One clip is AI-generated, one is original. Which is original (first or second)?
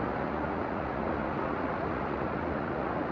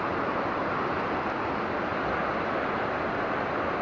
second